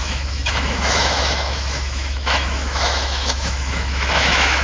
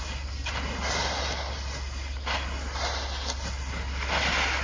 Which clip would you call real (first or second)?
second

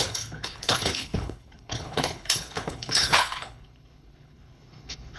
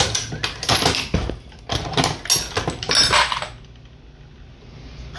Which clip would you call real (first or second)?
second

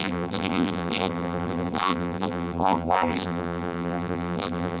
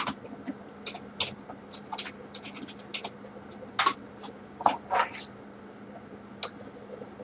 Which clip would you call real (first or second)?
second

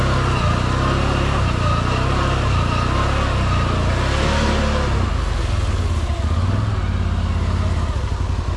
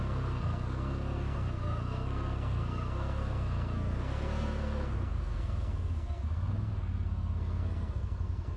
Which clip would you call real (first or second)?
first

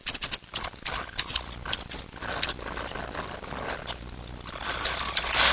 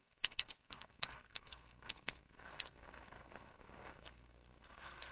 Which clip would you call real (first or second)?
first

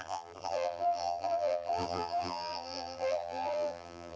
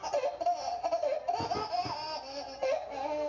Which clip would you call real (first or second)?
second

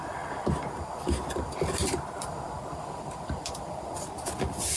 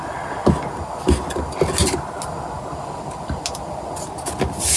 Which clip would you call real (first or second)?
second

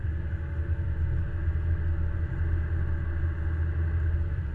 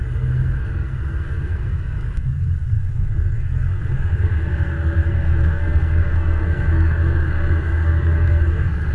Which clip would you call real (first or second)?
first